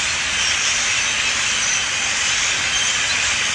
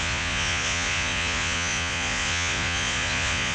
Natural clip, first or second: first